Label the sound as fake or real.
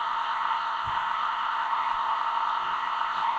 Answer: fake